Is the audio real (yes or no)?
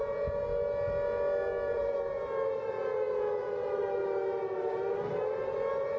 yes